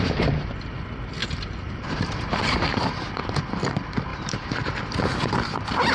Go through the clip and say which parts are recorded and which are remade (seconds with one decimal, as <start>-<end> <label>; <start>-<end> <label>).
0.0-1.2 recorded; 1.2-3.3 remade; 3.3-4.1 recorded; 4.1-4.8 remade; 4.8-5.9 recorded